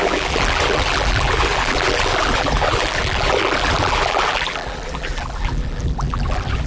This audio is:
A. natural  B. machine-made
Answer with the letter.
B